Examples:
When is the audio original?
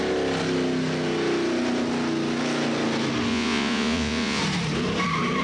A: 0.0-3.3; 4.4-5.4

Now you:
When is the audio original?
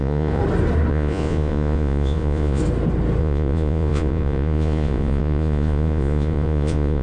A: 0.4-0.9; 2.6-3.2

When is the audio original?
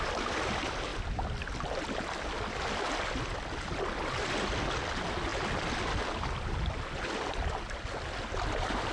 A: 0.0-8.9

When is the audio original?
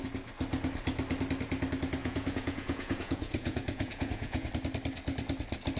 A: 0.0-2.0; 4.5-5.8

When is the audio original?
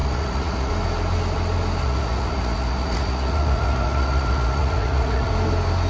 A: 0.7-1.8; 5.3-5.9